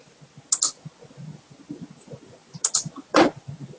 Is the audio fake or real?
real